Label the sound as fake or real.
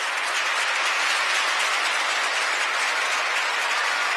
fake